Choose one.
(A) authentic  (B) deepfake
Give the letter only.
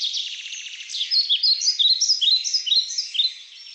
A